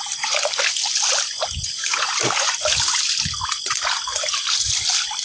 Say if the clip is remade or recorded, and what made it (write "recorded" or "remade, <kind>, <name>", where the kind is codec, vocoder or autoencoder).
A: recorded